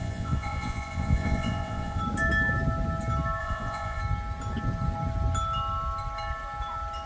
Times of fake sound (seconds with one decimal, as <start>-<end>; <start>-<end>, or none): 0.0-2.0; 3.4-4.0